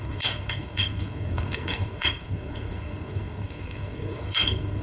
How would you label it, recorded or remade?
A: remade